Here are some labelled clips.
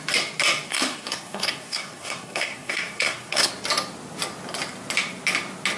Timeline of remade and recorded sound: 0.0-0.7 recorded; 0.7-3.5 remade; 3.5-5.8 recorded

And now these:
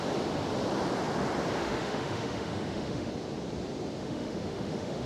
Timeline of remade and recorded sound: 0.0-1.6 recorded; 1.6-3.1 remade; 3.1-4.0 recorded; 4.0-5.1 remade

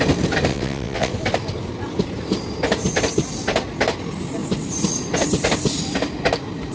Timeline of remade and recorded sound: 0.0-0.5 recorded; 0.5-1.1 remade; 1.1-6.7 recorded

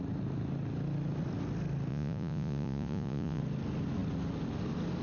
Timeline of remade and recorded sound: 0.0-1.9 recorded; 1.9-3.4 remade; 3.4-5.0 recorded

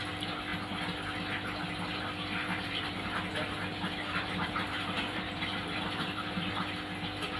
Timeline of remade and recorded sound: 0.0-2.5 recorded; 2.5-6.6 remade; 6.6-7.4 recorded

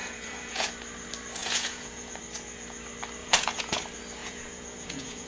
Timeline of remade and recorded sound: 0.0-0.7 remade; 0.7-1.4 recorded; 1.4-2.2 remade; 2.2-3.2 recorded; 3.2-3.8 remade; 3.8-4.2 recorded; 4.2-5.3 remade

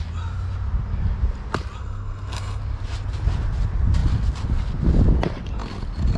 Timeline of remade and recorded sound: 0.0-1.8 recorded; 1.8-2.6 remade; 2.6-6.2 recorded